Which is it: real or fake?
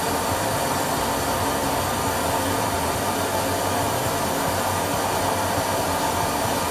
real